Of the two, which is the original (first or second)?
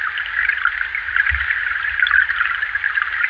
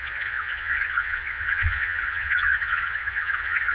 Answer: first